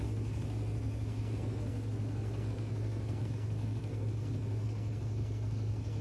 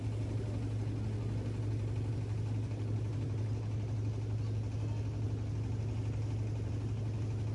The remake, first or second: first